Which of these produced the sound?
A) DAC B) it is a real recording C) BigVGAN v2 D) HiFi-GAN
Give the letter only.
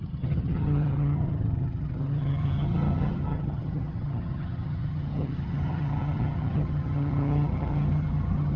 D